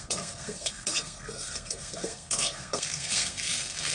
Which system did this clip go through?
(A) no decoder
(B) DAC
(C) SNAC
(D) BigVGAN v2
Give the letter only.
C